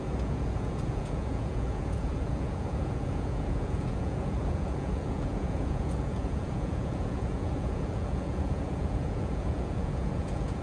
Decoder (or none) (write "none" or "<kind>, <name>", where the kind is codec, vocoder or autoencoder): vocoder, Vocos